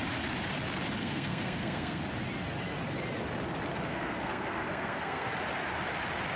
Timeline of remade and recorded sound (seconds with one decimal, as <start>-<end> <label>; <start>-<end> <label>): 0.0-1.0 recorded; 1.0-2.0 remade; 2.0-3.7 recorded; 3.7-5.3 remade; 5.3-6.4 recorded